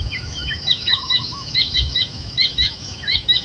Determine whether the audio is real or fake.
fake